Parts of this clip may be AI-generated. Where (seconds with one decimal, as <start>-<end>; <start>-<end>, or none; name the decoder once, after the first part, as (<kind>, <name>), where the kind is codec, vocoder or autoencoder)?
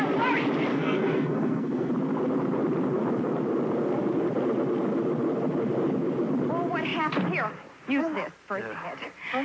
0.7-1.9 (codec, SNAC)